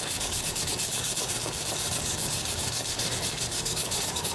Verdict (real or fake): fake